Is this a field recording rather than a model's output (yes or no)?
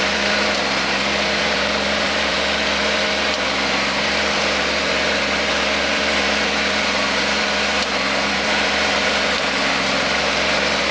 no